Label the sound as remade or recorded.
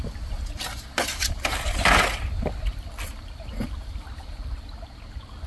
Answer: remade